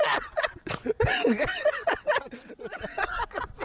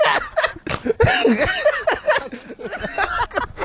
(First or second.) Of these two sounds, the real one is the second